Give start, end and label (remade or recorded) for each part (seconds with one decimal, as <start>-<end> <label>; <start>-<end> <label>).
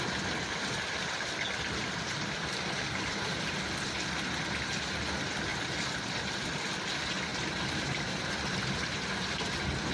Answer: 0.0-5.5 recorded; 5.5-6.7 remade; 6.7-7.3 recorded; 7.3-9.4 remade; 9.4-9.9 recorded